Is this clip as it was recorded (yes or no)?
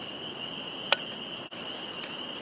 yes